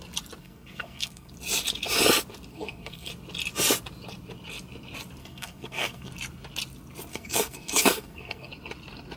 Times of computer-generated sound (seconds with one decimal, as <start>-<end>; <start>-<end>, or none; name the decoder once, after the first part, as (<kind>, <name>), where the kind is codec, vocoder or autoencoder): 0.4-1.3 (codec, SNAC); 2.5-3.1; 5.2-6.1; 7.1-8.5